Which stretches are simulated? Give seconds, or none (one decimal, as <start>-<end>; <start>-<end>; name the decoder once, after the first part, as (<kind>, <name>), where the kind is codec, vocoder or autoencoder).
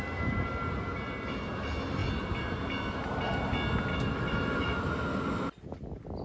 3.9-4.9 (autoencoder, DAC-VAE)